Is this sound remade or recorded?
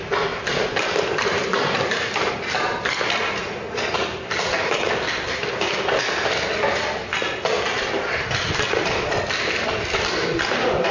recorded